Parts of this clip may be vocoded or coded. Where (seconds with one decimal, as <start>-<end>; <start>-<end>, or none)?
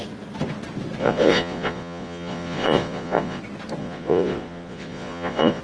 1.0-3.4; 3.8-5.6